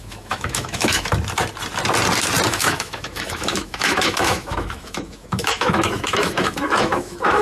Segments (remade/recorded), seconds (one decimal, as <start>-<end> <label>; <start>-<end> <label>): 0.0-1.1 remade; 1.1-2.5 recorded; 2.5-7.4 remade